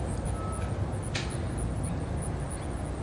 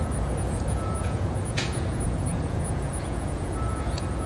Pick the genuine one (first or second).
first